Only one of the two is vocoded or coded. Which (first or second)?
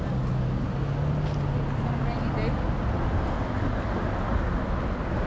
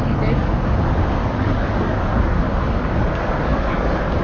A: second